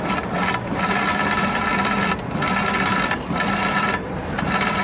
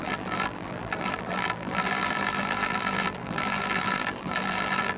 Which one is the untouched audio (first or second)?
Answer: first